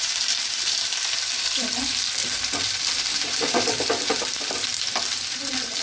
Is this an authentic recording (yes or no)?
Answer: no